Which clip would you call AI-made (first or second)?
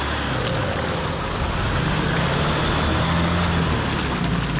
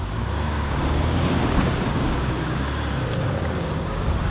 second